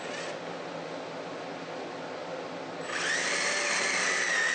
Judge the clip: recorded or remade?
recorded